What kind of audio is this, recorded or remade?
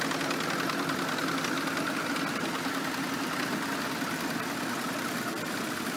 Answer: recorded